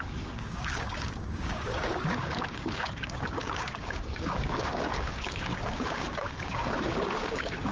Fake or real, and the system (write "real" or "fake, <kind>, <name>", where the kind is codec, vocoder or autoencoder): fake, codec, DAC